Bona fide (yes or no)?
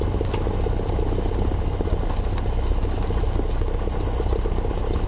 yes